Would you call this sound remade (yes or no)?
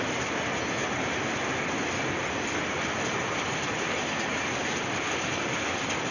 no